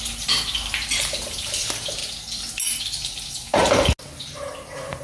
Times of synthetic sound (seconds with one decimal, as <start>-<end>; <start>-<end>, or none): 0.0-2.0; 3.0-3.6; 4.2-5.0